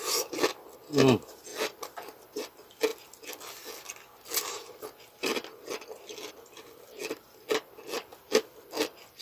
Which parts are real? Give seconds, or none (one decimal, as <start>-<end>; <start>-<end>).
0.0-1.5; 2.5-7.0; 7.7-8.1